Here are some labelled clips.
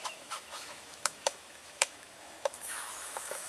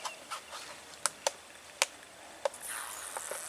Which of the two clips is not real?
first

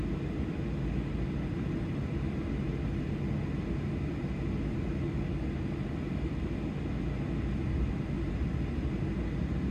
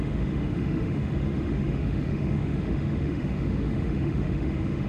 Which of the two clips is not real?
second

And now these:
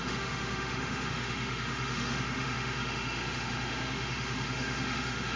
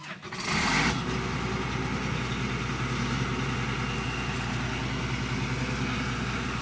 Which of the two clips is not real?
first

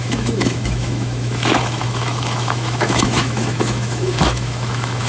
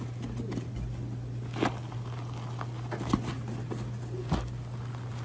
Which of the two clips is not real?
first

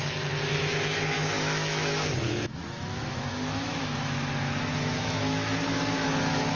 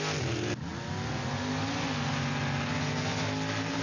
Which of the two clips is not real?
first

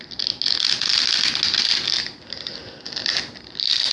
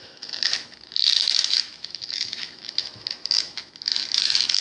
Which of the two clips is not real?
second